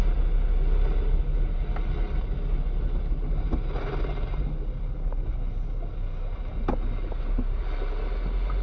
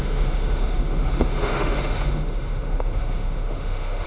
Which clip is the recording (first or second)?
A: first